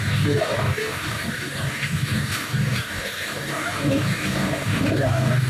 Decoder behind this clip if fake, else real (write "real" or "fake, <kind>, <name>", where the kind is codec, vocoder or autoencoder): fake, codec, DAC